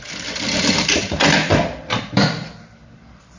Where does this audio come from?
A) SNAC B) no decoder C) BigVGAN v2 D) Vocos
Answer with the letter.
C